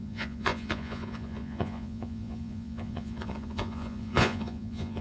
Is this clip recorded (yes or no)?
no